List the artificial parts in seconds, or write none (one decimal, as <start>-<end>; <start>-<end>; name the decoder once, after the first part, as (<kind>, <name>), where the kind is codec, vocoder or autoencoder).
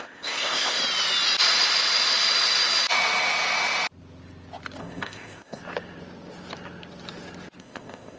0.0-0.8 (codec, ZipCodec); 4.8-5.6; 7.6-8.2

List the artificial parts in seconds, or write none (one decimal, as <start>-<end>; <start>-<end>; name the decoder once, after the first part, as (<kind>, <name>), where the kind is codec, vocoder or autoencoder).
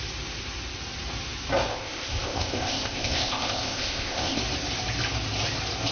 1.7-4.4 (codec, ZipCodec)